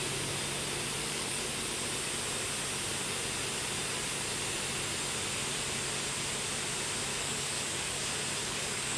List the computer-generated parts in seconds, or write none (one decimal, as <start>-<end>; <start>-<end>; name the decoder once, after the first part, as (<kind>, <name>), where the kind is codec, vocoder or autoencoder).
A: 1.0-1.6 (codec, DAC); 7.1-8.0; 8.4-9.0